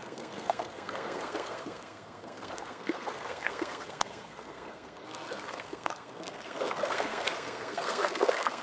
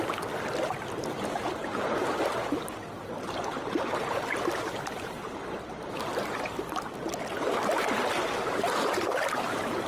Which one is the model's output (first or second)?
first